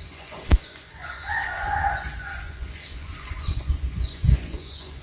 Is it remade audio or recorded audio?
remade